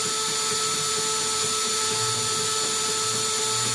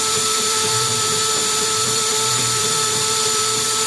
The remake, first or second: second